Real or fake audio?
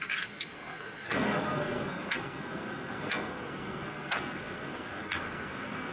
fake